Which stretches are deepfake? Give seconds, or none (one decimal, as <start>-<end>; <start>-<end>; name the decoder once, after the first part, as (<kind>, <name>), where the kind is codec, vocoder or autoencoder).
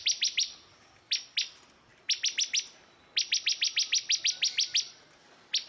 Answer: none